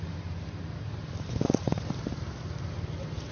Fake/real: real